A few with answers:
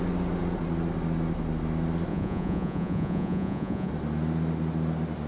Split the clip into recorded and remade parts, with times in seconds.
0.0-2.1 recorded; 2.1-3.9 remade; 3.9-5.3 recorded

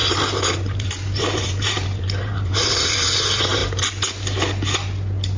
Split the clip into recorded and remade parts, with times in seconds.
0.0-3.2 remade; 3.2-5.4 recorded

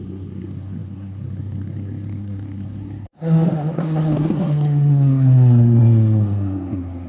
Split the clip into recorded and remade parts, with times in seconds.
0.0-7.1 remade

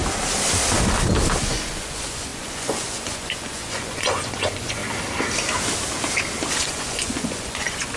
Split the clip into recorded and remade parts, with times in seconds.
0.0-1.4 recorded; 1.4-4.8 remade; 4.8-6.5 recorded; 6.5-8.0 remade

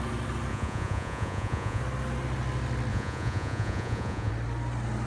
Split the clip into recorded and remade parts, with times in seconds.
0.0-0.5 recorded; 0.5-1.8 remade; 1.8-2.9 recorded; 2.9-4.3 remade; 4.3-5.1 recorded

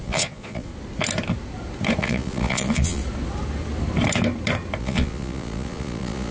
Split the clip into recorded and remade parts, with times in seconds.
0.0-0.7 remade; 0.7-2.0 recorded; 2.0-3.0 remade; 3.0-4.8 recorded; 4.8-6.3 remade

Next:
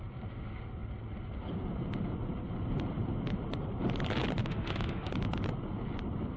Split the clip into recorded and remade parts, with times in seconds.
0.0-4.4 recorded; 4.4-5.1 remade; 5.1-6.4 recorded